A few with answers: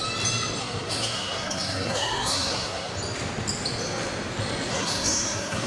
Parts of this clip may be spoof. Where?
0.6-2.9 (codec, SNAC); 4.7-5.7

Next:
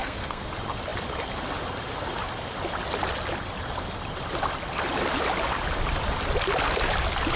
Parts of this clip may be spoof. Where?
0.0-0.5 (codec, SNAC)

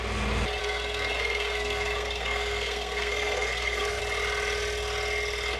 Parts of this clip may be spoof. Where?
0.6-4.0 (codec, SNAC)

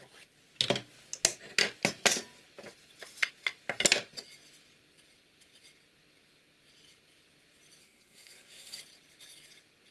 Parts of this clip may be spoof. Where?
7.8-8.8 (codec, SNAC)